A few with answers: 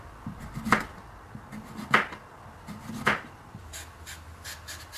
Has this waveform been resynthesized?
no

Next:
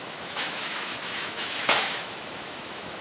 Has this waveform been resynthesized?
yes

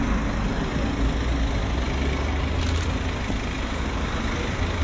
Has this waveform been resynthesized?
no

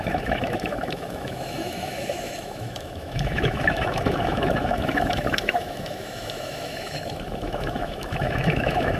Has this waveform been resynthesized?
yes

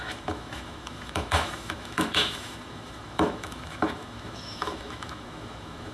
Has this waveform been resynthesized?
yes